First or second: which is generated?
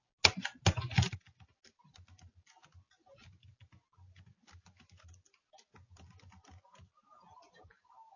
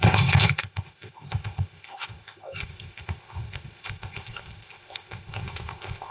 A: second